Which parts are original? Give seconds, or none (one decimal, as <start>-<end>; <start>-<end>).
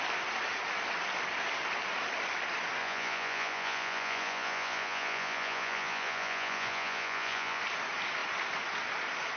0.0-2.8; 7.6-9.4